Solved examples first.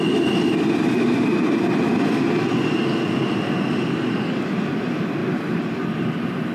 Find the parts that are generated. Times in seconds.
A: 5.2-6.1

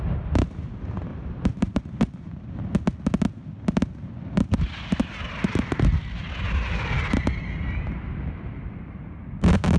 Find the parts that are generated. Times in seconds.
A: 1.1-1.8

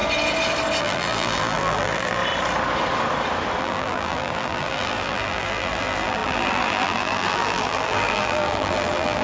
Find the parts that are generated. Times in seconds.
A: 0.8-2.2; 3.6-9.2

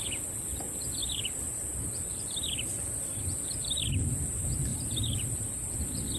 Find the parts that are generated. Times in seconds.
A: 1.0-3.4; 4.7-5.7

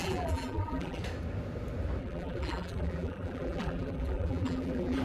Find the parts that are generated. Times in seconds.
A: 0.0-1.0; 2.0-5.0